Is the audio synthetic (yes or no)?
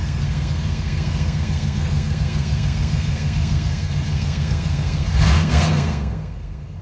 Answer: yes